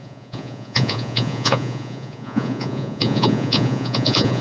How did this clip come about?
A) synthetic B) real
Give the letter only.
A